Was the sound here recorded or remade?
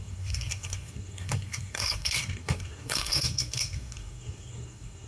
remade